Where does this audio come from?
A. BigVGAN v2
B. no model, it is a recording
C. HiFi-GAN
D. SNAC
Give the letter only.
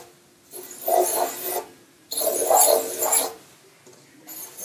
B